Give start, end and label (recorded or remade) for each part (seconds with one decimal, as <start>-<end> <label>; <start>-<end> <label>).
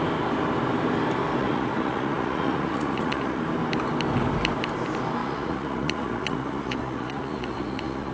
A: 0.0-1.4 recorded; 1.4-3.4 remade; 3.4-5.2 recorded; 5.2-8.1 remade